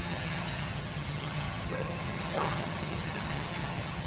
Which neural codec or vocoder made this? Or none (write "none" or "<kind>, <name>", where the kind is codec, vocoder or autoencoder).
vocoder, HiFi-GAN